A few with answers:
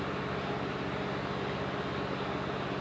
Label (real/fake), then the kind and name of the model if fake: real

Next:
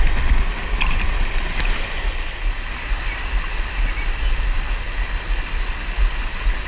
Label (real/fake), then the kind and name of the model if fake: real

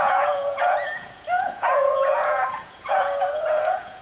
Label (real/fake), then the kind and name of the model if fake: fake, vocoder, Vocos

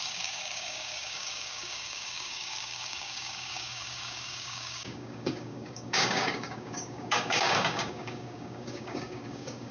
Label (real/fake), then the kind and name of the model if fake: fake, codec, DAC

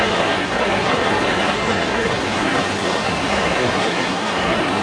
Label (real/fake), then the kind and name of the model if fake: fake, codec, SNAC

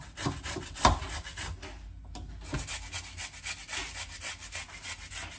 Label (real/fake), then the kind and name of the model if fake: real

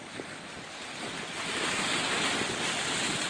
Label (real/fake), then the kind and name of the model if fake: real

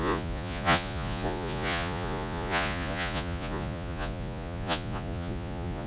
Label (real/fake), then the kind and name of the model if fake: fake, vocoder, Vocos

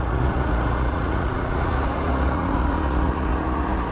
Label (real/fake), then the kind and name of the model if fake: fake, vocoder, Vocos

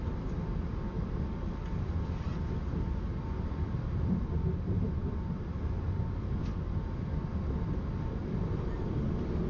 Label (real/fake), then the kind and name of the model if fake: real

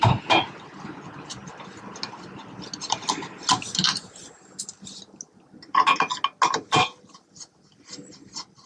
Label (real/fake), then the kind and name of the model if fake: real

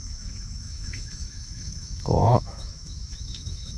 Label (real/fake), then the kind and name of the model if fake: fake, autoencoder, DAC-VAE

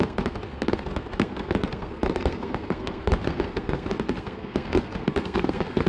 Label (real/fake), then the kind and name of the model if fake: fake, codec, SNAC